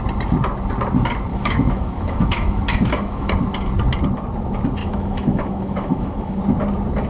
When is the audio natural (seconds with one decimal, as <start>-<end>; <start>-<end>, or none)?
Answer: 0.0-1.3; 3.3-4.8; 6.4-7.1